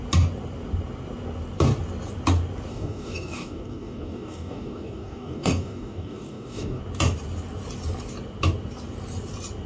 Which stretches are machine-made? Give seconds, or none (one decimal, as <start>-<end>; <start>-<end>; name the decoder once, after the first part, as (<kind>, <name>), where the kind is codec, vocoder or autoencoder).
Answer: 2.7-6.8 (codec, DAC)